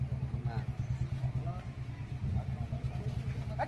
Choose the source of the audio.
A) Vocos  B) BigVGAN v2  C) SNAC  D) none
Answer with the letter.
D